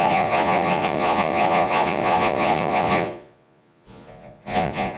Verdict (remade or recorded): remade